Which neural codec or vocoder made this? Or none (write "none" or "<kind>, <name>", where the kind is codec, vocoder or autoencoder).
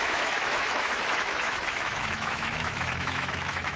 autoencoder, DAC-VAE